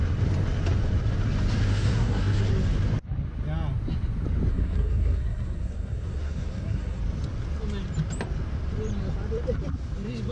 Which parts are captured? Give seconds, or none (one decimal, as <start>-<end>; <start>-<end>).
0.0-1.7; 2.4-4.5; 7.0-10.3

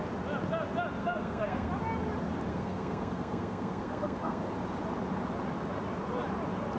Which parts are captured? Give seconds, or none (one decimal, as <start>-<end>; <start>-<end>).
0.0-1.0; 1.7-2.5; 4.4-6.8

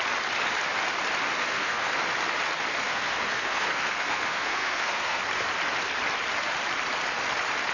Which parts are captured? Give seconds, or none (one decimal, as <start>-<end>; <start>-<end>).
0.0-1.4; 2.0-2.7; 5.2-7.7

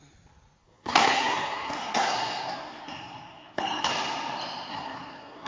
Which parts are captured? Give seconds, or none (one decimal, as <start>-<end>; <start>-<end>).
0.0-0.6; 3.9-4.7

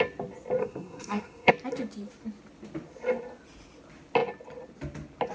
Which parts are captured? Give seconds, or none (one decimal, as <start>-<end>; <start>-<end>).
0.0-0.6; 1.5-5.3

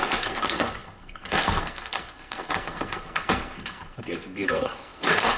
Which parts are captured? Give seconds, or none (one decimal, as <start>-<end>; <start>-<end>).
none